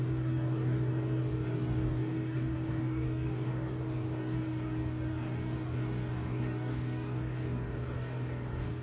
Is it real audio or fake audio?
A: fake